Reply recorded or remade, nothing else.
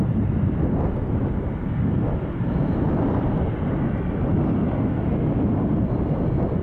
recorded